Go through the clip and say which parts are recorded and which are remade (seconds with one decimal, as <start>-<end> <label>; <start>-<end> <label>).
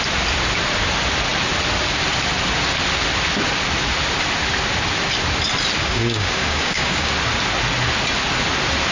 0.0-5.8 recorded; 5.8-7.1 remade; 7.1-8.9 recorded